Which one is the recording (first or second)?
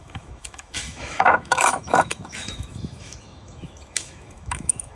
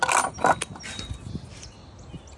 second